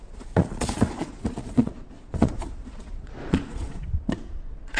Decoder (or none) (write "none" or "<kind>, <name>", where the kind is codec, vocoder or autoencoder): vocoder, Vocos